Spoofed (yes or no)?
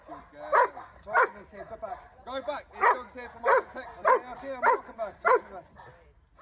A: no